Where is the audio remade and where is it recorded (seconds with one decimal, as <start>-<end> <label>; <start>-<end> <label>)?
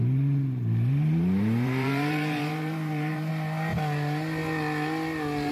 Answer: 0.0-3.3 remade; 3.3-5.5 recorded